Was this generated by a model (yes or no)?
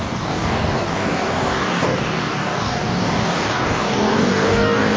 yes